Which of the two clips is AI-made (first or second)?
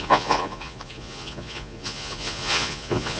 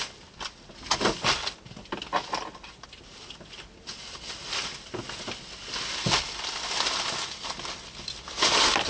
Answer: first